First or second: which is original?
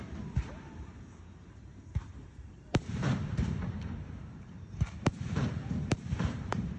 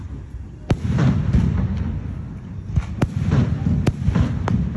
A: second